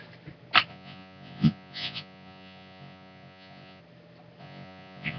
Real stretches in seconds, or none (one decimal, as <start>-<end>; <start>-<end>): 0.0-0.7; 3.8-4.4